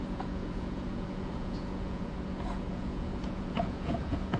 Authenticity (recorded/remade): remade